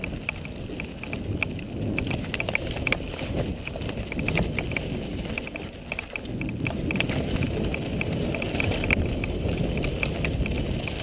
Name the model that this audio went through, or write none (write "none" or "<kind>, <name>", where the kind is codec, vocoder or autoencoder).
none